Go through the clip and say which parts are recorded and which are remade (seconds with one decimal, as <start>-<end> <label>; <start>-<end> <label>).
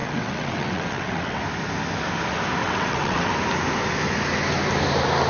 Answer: 0.0-1.4 remade; 1.4-2.6 recorded; 2.6-3.3 remade; 3.3-5.3 recorded